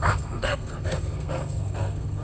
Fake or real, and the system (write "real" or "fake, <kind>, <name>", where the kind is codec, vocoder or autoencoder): fake, codec, SNAC